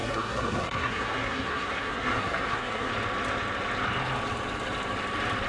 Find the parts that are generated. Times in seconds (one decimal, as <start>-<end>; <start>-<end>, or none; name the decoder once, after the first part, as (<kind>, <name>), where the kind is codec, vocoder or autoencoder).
0.0-2.9 (codec, SNAC)